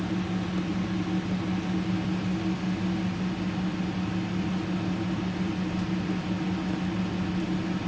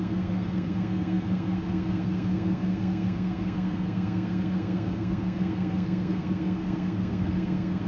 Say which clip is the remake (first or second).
second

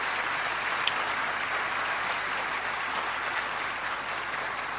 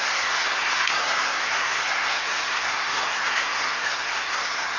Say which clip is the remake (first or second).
second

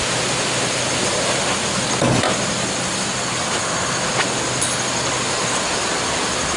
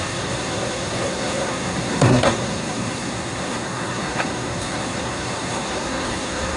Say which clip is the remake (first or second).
second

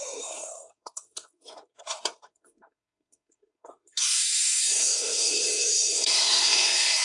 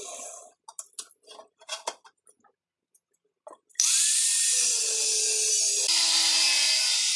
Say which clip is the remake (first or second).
first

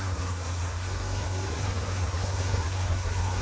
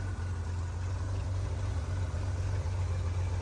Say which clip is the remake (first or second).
first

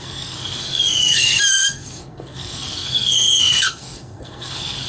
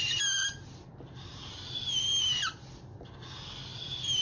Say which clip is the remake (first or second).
first